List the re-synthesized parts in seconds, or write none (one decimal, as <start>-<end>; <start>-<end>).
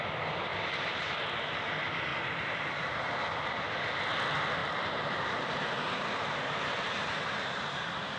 0.5-1.2; 2.1-4.0; 4.6-8.2